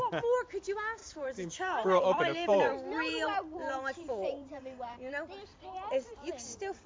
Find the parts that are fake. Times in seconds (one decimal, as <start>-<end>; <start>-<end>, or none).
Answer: 1.0-5.1